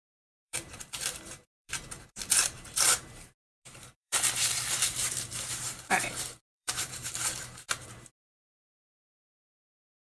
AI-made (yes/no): yes